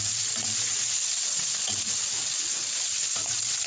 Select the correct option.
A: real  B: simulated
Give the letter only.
B